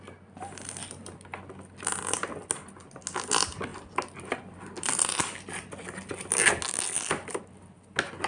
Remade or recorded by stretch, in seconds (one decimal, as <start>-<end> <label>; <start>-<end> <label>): 0.0-8.3 recorded

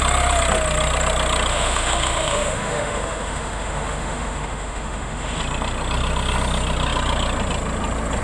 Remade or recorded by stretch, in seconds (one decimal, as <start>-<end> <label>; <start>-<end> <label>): 0.0-1.5 recorded; 1.5-5.4 remade; 5.4-8.2 recorded

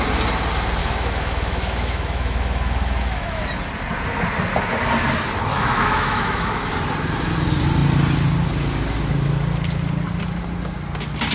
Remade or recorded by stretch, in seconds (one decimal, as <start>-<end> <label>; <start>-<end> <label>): 0.0-0.8 recorded; 0.8-3.4 remade; 3.4-5.5 recorded; 5.5-6.7 remade; 6.7-11.3 recorded

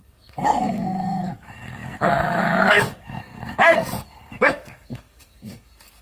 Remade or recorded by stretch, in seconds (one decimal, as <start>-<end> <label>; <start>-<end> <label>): 0.0-6.0 remade

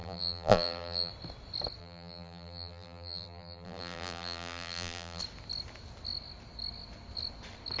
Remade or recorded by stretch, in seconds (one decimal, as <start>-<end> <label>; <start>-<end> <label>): 0.0-1.1 remade; 1.1-1.8 recorded; 1.8-5.2 remade; 5.2-7.8 recorded

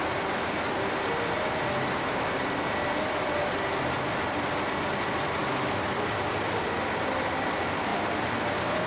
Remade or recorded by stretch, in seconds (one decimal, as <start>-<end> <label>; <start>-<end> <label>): 0.0-8.9 recorded

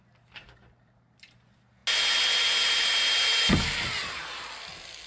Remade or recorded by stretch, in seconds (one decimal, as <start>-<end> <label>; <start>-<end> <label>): 0.0-5.1 recorded